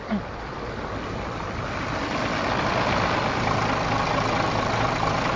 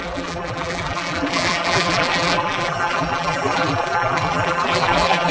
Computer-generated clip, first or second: second